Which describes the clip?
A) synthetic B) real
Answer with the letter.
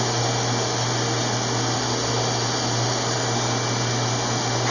B